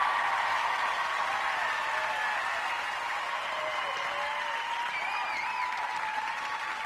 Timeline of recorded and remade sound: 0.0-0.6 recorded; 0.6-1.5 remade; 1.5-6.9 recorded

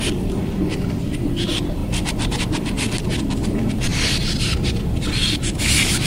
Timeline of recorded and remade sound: 0.0-6.1 recorded